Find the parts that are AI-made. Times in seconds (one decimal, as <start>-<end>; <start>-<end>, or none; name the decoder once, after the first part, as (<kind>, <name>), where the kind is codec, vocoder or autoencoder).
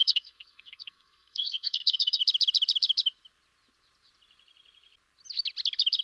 0.0-2.2 (codec, SNAC)